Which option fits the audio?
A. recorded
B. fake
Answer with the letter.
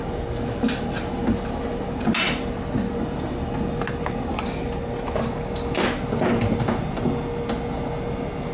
A